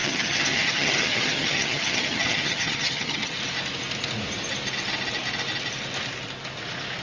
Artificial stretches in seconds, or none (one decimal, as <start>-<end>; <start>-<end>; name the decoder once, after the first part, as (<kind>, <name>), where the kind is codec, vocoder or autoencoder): 0.0-3.4 (vocoder, HiFi-GAN)